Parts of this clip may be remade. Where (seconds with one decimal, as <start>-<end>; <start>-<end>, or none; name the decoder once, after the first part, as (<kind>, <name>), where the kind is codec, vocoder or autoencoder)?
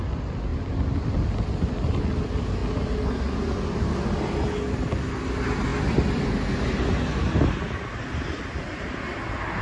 none